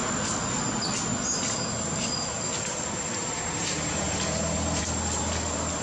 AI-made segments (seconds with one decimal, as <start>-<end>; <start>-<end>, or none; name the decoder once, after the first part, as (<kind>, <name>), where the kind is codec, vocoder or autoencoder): 3.2-4.8 (vocoder, BigVGAN v2)